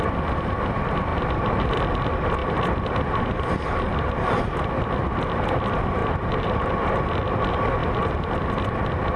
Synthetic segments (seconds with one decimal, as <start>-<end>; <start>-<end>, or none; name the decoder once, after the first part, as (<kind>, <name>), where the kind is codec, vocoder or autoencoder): 1.1-1.7 (vocoder, BigVGAN v2); 6.0-6.7